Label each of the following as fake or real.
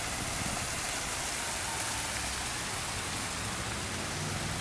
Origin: real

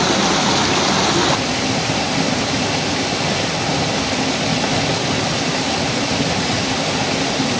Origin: real